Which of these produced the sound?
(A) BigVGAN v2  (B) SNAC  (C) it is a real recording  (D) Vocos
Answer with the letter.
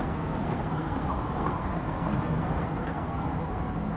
B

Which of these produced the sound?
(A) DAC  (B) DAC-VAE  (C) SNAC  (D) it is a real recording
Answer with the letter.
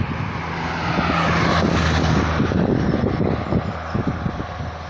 D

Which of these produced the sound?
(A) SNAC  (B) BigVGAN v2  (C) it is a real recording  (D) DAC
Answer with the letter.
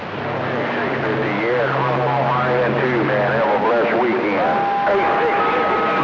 C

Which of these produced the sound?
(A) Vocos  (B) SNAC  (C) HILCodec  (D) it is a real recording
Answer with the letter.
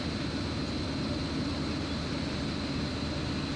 D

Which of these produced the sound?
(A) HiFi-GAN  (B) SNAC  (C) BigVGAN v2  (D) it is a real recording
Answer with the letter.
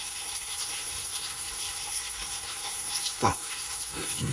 B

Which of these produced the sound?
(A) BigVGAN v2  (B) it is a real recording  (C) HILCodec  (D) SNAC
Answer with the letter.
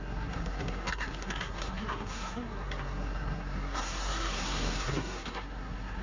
D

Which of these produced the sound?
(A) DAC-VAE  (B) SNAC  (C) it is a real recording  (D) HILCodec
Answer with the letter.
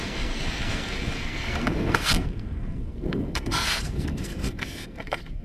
B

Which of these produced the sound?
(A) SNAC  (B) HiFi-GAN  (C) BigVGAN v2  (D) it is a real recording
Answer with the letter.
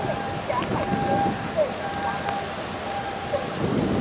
D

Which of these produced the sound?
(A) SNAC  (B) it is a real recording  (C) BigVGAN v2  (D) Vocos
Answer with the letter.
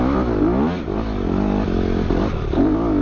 B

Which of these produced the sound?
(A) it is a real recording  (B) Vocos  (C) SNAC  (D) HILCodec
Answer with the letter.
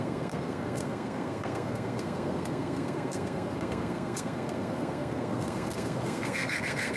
C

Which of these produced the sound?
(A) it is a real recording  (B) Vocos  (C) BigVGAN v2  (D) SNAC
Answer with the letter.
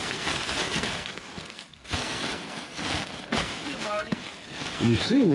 D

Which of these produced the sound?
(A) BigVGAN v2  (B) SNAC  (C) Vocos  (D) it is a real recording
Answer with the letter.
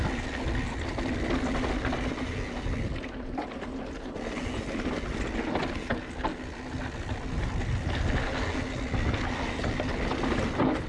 D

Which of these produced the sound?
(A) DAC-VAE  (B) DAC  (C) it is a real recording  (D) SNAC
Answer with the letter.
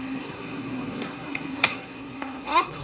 D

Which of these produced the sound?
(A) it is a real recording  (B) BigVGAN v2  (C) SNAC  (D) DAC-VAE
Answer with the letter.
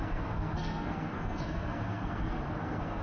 C